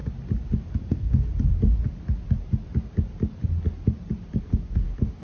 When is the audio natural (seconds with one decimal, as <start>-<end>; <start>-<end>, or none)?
0.0-0.9; 1.3-4.4